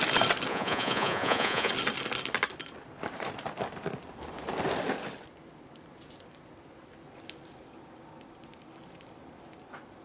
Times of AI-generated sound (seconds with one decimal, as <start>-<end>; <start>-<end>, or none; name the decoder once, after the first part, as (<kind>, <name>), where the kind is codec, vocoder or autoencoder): 0.5-1.7 (vocoder, Vocos)

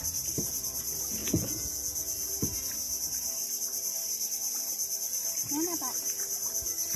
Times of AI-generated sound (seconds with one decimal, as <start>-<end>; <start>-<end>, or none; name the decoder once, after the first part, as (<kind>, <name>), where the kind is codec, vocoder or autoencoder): 1.2-2.3 (vocoder, Vocos)

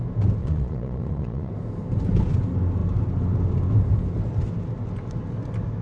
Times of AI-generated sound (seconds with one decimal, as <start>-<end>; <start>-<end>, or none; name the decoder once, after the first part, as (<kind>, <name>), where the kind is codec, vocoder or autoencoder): 0.4-1.5 (vocoder, Vocos)

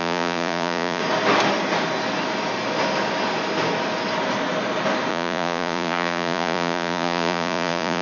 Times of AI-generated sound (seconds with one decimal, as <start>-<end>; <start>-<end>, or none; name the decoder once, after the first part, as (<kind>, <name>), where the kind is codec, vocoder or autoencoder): 0.0-1.0 (vocoder, Vocos); 5.1-8.0